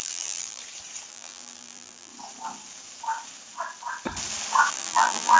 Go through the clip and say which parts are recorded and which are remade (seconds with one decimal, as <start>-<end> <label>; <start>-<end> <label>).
0.0-0.6 remade; 0.6-1.1 recorded; 1.1-2.1 remade; 2.1-4.7 recorded; 4.7-5.4 remade